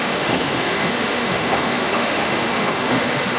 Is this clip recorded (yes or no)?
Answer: no